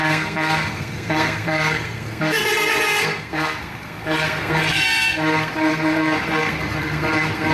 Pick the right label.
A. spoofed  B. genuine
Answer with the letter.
A